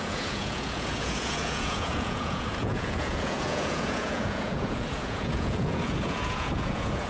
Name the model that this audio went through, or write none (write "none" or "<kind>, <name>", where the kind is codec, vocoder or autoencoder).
vocoder, Vocos